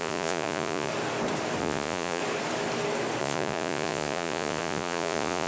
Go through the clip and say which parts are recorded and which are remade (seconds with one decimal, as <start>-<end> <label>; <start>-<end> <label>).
0.0-0.9 remade; 0.9-1.6 recorded; 1.6-2.2 remade; 2.2-3.2 recorded; 3.2-5.5 remade

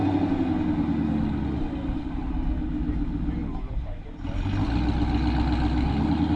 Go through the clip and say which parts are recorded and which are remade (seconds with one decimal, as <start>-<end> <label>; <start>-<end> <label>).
0.0-6.4 recorded

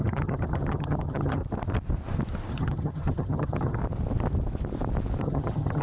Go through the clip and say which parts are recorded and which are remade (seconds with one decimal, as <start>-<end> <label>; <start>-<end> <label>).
0.0-1.4 remade; 1.4-2.5 recorded; 2.5-3.8 remade; 3.8-5.2 recorded; 5.2-5.8 remade

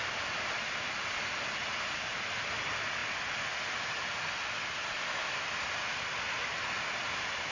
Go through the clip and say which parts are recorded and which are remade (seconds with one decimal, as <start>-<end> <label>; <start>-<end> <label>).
0.0-7.5 recorded

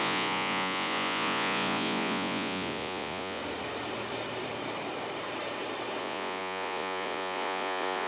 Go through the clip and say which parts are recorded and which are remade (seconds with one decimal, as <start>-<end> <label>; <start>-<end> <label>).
0.0-3.4 remade; 3.4-6.0 recorded; 6.0-8.1 remade

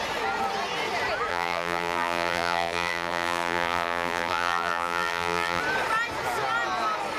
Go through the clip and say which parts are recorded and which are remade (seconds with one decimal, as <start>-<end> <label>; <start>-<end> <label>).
0.0-1.3 recorded; 1.3-5.6 remade; 5.6-7.2 recorded

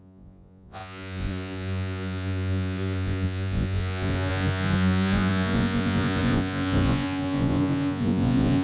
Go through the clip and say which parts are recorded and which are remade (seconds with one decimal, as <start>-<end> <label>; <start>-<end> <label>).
0.0-8.6 remade

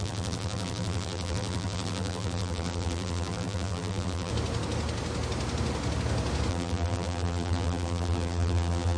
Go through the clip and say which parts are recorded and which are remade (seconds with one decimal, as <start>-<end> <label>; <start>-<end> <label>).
0.0-4.3 remade; 4.3-6.5 recorded; 6.5-9.0 remade